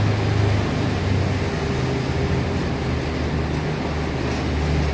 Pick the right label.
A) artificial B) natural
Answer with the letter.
B